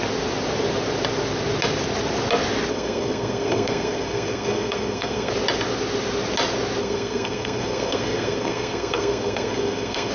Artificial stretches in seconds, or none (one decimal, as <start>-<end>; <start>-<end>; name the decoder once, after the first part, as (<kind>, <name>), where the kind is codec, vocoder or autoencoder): 2.7-5.3 (codec, SNAC); 6.8-10.1